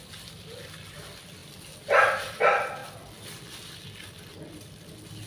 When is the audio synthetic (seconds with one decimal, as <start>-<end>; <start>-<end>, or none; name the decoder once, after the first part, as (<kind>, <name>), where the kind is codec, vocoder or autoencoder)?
none